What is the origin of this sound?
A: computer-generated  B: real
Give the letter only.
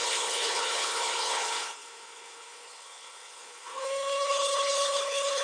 A